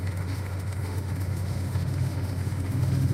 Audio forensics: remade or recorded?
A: remade